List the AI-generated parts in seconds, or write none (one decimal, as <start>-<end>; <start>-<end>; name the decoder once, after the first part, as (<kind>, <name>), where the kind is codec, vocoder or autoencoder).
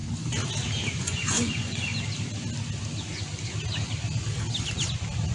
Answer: 0.9-1.9 (vocoder, Vocos)